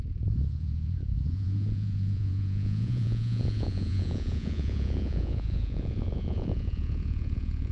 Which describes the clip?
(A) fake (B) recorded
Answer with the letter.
A